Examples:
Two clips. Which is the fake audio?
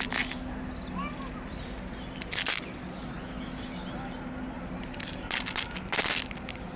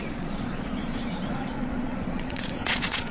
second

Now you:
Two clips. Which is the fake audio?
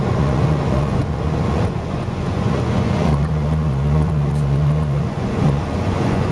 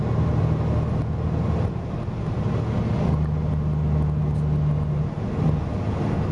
first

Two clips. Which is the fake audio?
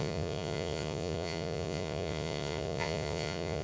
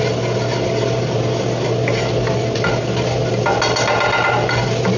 first